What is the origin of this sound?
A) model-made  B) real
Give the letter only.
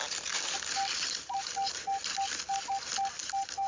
B